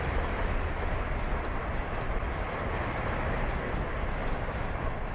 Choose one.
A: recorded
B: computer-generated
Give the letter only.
A